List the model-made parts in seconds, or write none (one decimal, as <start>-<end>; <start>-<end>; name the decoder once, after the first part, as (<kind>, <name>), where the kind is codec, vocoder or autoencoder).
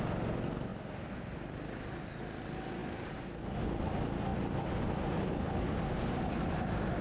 none